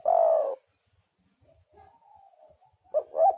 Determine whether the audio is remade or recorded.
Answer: recorded